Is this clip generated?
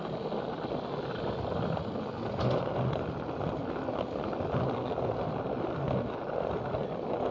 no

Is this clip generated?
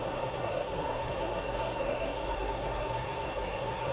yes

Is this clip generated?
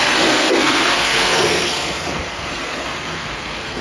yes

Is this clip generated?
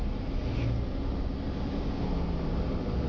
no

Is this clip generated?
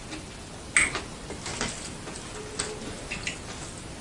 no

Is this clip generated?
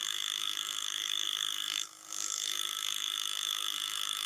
yes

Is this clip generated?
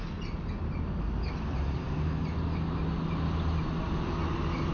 no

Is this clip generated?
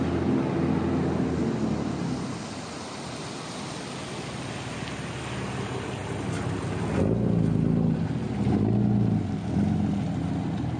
no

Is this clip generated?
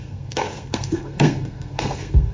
yes